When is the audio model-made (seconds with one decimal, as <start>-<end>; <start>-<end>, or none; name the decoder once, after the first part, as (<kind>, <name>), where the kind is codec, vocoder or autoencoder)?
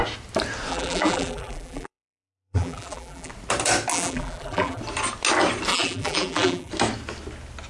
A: 0.7-3.3 (vocoder, BigVGAN v2); 3.9-4.8; 5.7-6.7